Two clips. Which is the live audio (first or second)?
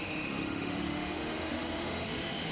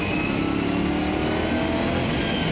second